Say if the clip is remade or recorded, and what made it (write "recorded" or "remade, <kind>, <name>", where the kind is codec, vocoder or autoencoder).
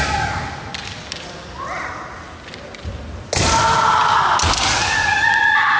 recorded